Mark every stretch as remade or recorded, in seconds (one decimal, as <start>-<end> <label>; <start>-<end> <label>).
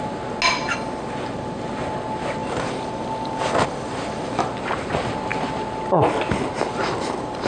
0.0-0.6 recorded; 0.6-1.7 remade; 1.7-2.4 recorded; 2.4-4.5 remade; 4.5-6.7 recorded; 6.7-7.5 remade